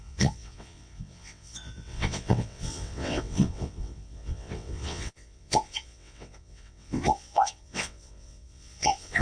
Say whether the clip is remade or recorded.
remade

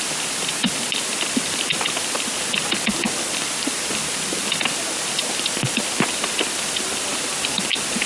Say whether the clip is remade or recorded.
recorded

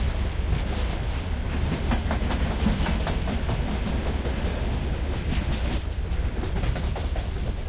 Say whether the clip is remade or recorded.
remade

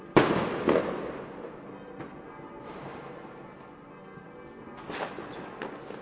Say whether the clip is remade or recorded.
recorded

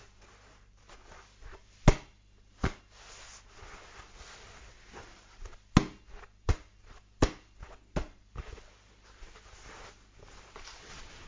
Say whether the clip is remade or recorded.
recorded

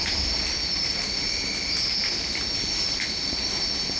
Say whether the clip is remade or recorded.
recorded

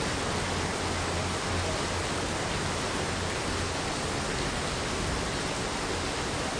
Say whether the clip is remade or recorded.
recorded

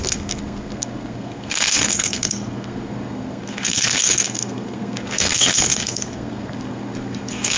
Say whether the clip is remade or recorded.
remade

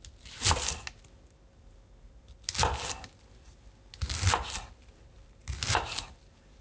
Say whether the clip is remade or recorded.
recorded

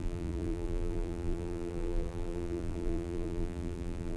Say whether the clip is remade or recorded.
remade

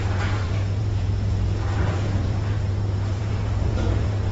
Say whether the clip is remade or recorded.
remade